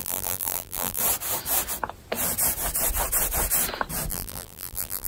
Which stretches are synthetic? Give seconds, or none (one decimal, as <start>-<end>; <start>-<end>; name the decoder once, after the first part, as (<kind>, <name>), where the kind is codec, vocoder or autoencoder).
0.0-1.0 (vocoder, BigVGAN v2); 4.1-5.1